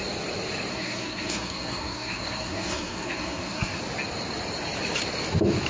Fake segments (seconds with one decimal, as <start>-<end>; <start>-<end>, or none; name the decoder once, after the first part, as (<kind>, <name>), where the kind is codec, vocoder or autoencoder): 0.7-3.8 (codec, SNAC)